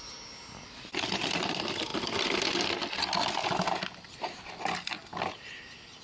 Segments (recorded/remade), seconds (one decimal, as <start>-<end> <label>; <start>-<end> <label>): 0.0-6.0 recorded